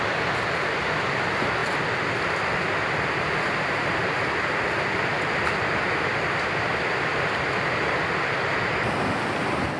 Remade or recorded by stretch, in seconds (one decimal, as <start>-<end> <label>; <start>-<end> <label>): 0.0-9.8 recorded